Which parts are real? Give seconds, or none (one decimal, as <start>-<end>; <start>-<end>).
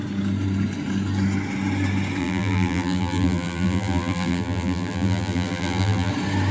0.0-2.2; 6.1-6.5